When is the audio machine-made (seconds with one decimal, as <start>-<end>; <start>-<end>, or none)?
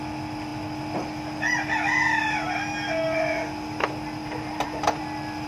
4.2-5.0